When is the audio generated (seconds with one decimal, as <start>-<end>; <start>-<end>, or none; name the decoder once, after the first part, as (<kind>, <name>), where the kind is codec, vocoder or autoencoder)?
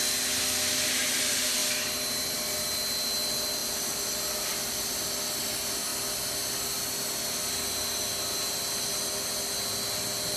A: none